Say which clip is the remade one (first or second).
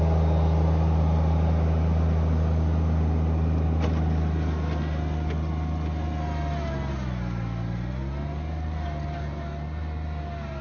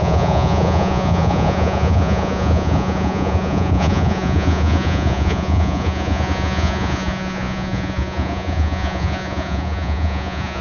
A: second